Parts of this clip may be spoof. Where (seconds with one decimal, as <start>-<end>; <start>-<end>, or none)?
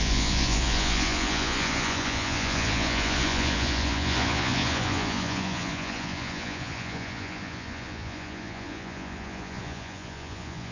0.0-10.7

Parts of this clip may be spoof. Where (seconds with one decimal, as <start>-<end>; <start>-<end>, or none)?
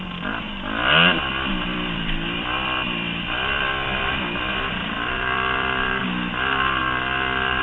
1.5-6.0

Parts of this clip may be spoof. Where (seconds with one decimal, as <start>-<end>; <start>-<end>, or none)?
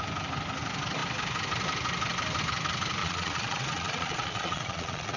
3.0-5.2